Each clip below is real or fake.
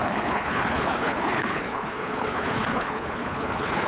fake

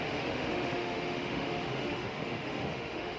fake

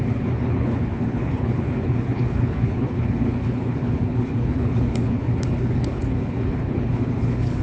fake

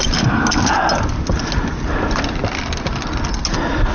real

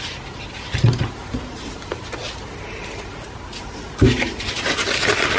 real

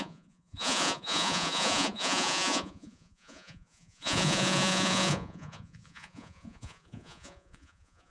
fake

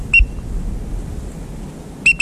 real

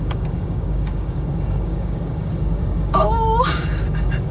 fake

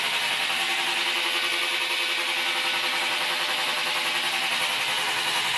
real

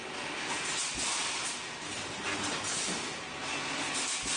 real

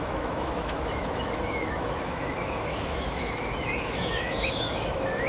fake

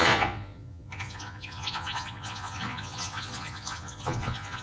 fake